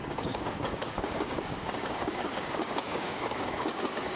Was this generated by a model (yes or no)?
yes